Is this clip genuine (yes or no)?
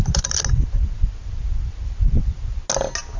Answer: yes